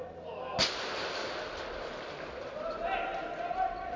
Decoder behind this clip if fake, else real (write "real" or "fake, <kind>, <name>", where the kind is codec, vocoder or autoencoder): real